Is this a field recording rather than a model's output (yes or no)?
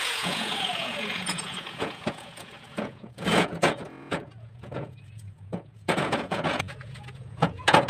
no